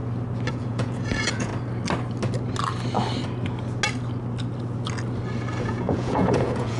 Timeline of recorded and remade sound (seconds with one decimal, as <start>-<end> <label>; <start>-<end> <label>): 0.0-0.5 recorded; 0.5-1.5 remade; 1.5-5.6 recorded; 5.6-6.8 remade